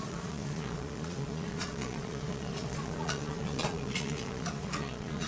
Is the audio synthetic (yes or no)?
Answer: yes